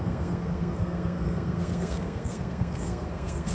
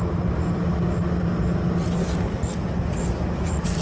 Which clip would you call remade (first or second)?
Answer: first